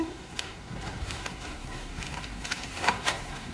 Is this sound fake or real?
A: fake